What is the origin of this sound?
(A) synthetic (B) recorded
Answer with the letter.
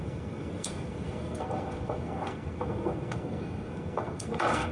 A